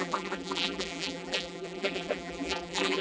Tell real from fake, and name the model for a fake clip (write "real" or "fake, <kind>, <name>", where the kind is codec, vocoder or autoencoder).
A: fake, vocoder, BigVGAN v2